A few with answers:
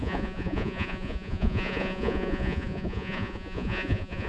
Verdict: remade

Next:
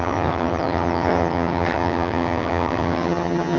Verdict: remade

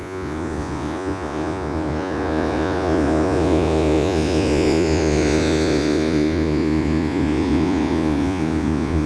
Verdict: remade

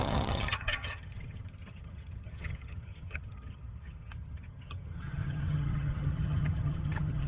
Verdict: remade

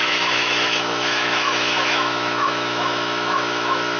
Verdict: remade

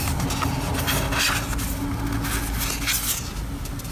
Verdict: recorded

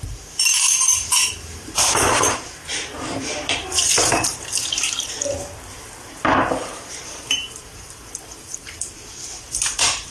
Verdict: remade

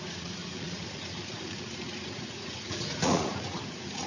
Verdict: remade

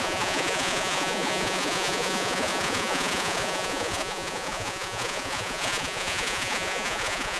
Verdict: remade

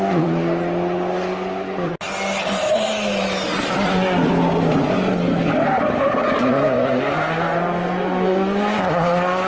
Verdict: recorded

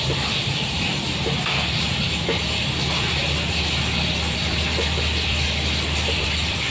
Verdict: remade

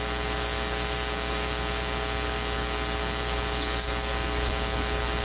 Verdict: recorded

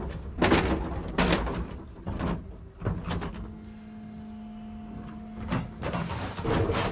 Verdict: recorded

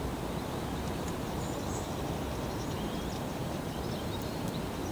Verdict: recorded